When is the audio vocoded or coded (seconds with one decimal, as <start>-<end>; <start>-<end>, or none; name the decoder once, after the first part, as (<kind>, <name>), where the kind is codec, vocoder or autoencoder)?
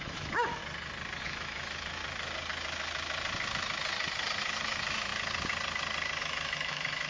0.0-0.6 (autoencoder, DAC-VAE); 1.2-2.0; 4.6-5.1; 6.2-7.1